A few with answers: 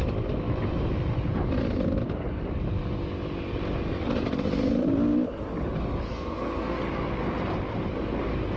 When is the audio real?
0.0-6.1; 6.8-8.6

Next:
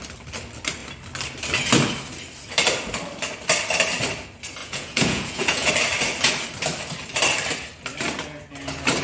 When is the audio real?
0.0-4.6; 5.7-9.0

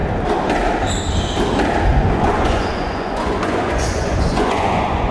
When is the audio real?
0.0-1.9